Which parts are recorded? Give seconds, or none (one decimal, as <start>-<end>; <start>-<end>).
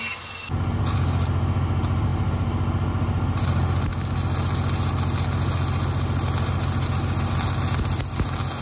0.0-8.6